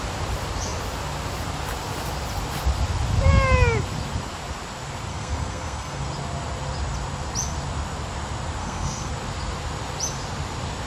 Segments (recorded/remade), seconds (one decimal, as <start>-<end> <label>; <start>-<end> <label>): 0.0-5.1 recorded; 5.1-6.0 remade; 6.0-8.6 recorded; 8.6-9.1 remade; 9.1-10.9 recorded